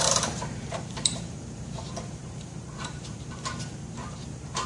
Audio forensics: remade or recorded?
remade